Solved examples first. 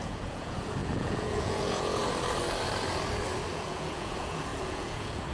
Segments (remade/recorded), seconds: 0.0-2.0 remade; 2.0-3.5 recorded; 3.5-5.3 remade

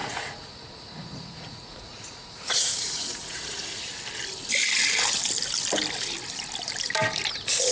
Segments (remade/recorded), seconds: 0.0-4.0 remade; 4.0-7.7 recorded

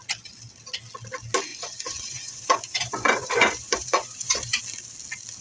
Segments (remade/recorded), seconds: 0.0-1.5 recorded; 1.5-4.6 remade; 4.6-5.4 recorded

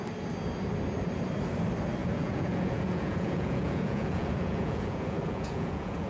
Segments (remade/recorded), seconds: 0.0-2.0 recorded; 2.0-6.1 remade